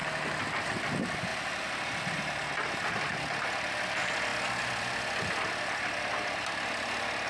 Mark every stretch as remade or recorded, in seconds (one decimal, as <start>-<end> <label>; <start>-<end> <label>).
0.0-7.3 recorded